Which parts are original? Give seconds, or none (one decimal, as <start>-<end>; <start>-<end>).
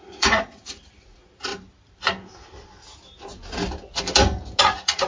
1.5-4.6